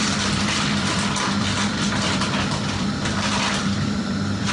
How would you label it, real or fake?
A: fake